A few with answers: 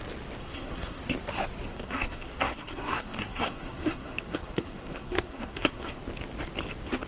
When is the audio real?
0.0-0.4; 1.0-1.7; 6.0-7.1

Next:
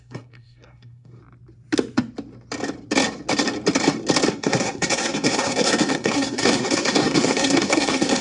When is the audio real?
1.2-4.3

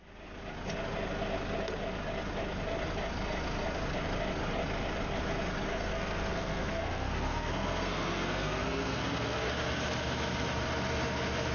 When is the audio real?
0.0-5.7; 9.5-11.5

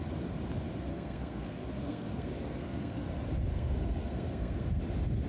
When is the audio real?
0.0-0.9; 3.1-3.5; 4.8-5.3

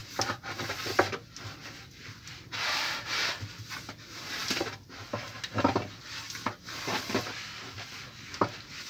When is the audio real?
0.0-8.9